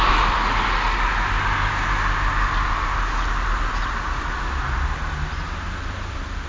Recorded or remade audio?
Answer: recorded